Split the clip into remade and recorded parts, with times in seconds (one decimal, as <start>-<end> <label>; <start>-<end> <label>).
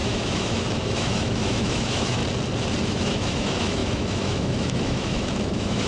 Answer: 0.0-2.2 remade; 2.2-2.8 recorded; 2.8-5.9 remade